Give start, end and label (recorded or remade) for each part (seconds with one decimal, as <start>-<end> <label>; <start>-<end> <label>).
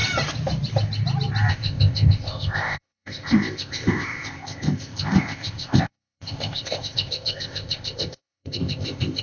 0.0-1.5 recorded; 1.5-9.2 remade